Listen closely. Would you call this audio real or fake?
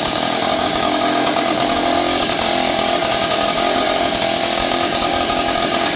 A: fake